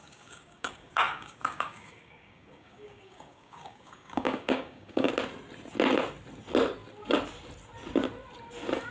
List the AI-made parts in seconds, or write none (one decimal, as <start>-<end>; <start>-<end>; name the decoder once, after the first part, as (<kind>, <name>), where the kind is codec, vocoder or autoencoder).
0.0-5.1 (codec, DAC)